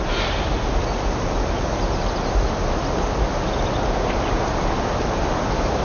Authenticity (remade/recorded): recorded